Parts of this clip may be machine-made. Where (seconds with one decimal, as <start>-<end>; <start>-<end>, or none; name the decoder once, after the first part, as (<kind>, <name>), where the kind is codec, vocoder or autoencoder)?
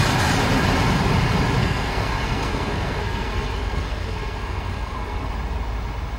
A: 1.6-5.3 (codec, SNAC)